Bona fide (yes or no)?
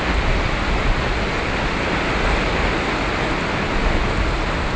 yes